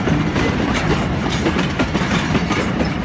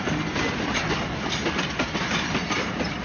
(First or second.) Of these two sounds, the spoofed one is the first